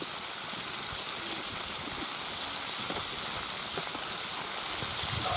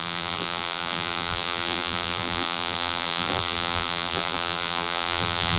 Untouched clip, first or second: first